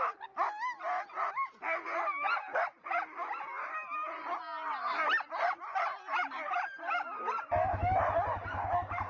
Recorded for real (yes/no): yes